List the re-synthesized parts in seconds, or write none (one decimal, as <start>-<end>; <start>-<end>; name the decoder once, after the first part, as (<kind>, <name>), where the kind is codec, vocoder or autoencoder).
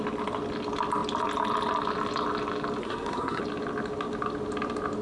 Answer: 2.8-3.4 (codec, SNAC)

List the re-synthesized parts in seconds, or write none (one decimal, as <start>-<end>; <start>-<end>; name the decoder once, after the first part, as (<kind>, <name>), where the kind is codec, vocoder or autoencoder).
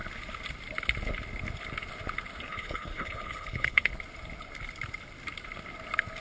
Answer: 2.5-3.9 (codec, HILCodec)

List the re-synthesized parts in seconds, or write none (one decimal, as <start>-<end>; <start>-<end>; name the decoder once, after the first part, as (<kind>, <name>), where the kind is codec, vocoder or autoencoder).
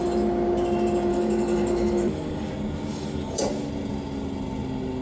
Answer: 1.1-2.5 (codec, DAC); 2.9-3.4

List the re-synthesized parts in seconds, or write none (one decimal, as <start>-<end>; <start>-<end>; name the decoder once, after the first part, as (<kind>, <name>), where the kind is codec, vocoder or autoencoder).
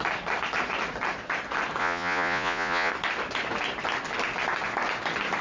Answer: 1.8-2.9 (vocoder, Vocos)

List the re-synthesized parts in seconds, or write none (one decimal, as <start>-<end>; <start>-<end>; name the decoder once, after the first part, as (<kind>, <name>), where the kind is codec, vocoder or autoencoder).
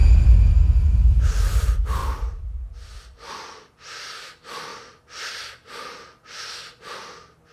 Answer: 2.0-3.3 (vocoder, BigVGAN v2); 4.7-5.5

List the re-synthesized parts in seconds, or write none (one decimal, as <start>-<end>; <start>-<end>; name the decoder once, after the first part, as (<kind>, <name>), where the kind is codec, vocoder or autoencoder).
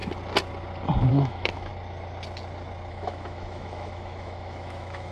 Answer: 1.1-1.7 (autoencoder, DAC-VAE); 2.9-5.1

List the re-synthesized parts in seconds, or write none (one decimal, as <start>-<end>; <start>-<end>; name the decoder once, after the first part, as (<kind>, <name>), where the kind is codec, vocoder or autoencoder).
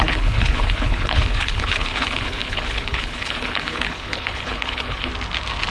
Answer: 0.0-5.1 (codec, HILCodec)